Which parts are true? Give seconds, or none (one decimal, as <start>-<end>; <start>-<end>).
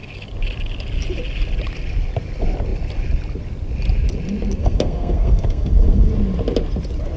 0.0-4.6; 6.1-7.2